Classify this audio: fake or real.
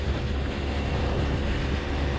real